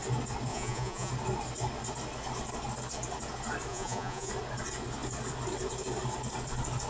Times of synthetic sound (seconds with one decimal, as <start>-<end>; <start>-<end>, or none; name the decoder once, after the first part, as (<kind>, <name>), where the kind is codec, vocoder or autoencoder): 0.5-1.1 (vocoder, Vocos); 3.7-4.3